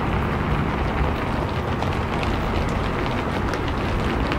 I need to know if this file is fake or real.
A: real